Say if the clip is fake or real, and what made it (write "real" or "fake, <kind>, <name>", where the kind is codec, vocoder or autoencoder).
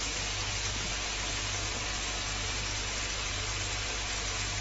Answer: real